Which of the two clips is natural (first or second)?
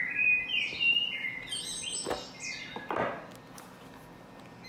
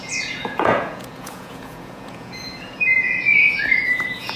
first